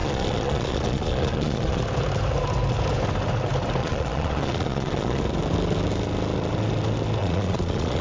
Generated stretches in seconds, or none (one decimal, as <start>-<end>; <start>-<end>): 0.0-1.8; 3.8-5.2; 7.2-8.0